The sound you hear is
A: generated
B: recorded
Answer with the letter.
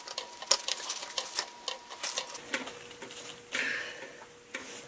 B